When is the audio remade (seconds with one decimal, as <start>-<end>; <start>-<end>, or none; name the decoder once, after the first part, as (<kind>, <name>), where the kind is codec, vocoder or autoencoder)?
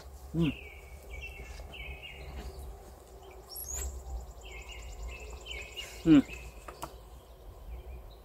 none